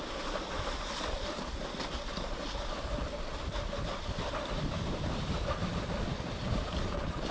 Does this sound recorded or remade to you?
recorded